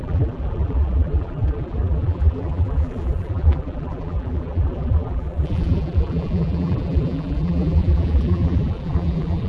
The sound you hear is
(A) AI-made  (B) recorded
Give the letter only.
A